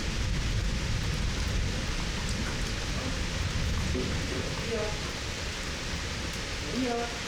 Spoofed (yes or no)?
no